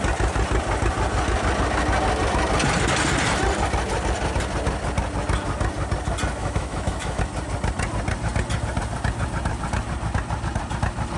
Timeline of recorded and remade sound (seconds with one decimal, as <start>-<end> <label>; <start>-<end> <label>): 0.0-6.4 recorded; 6.4-7.2 remade; 7.2-11.2 recorded